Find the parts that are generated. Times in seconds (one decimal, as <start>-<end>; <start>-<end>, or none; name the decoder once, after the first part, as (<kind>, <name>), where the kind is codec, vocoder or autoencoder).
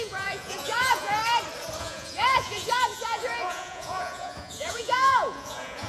0.0-1.2 (vocoder, Vocos); 1.8-5.9